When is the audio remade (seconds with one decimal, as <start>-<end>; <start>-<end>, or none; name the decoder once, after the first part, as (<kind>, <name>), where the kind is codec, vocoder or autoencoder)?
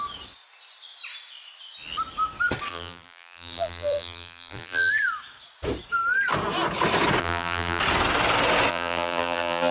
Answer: 2.7-4.9 (vocoder, BigVGAN v2); 7.2-7.8; 8.7-9.7